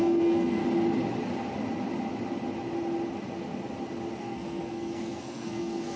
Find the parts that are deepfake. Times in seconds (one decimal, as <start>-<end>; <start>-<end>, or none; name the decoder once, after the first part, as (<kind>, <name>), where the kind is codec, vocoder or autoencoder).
0.0-0.6 (codec, SNAC); 4.2-6.0